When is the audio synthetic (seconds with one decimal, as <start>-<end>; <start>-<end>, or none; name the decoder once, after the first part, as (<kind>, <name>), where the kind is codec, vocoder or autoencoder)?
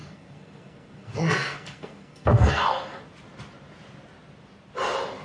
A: 0.0-3.0 (codec, SNAC)